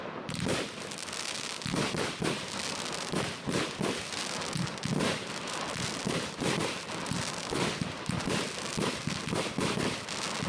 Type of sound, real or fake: real